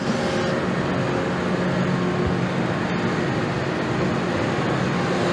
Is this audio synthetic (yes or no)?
no